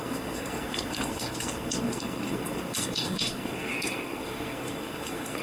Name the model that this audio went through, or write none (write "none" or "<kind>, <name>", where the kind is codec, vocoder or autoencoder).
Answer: codec, SNAC